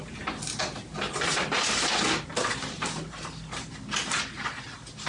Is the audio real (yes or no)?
yes